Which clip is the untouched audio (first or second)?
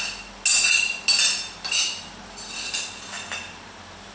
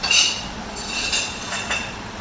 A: first